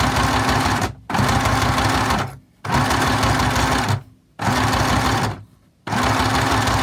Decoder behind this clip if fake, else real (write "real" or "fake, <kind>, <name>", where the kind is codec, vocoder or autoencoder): real